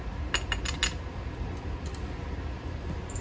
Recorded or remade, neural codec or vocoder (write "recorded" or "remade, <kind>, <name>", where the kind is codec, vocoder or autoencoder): recorded